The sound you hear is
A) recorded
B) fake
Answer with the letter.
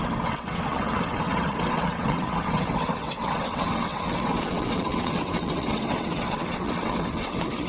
B